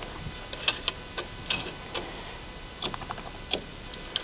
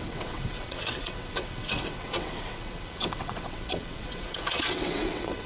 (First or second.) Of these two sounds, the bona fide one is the first